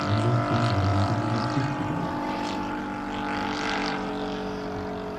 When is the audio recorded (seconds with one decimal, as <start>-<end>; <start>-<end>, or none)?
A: 0.0-0.9; 2.8-3.4; 4.1-5.2